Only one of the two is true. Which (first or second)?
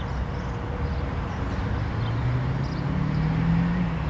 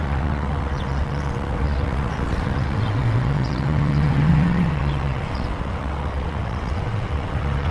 first